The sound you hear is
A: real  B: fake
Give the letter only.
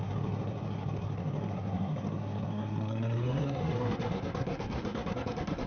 B